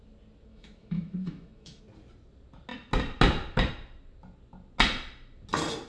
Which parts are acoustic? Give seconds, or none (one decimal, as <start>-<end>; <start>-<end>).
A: 0.0-0.5; 1.8-5.9